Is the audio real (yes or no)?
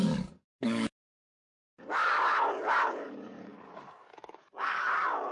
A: no